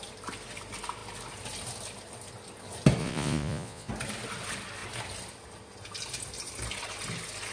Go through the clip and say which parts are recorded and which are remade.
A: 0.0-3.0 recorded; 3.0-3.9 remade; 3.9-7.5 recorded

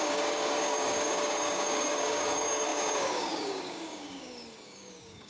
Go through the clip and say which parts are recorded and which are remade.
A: 0.0-5.3 remade